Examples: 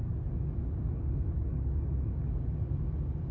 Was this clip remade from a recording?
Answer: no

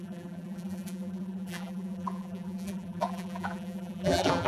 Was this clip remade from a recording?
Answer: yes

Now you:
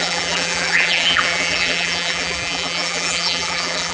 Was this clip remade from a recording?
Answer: yes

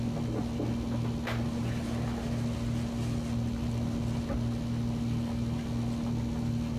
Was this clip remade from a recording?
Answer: no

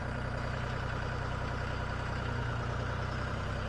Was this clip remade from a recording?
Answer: yes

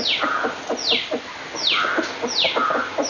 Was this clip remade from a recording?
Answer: no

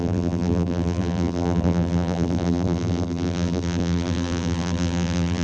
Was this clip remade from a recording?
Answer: yes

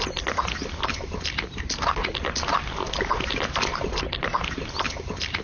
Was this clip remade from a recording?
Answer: no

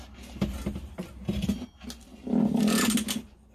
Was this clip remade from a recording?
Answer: no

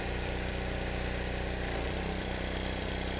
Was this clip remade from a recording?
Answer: yes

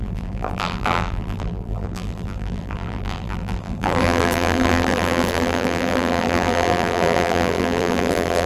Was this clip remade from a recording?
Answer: yes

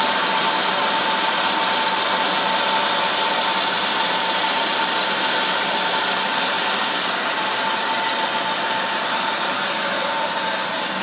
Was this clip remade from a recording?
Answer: yes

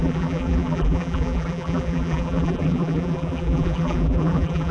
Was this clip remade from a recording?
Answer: yes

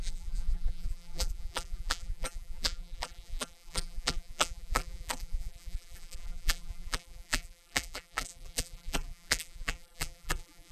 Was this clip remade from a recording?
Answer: yes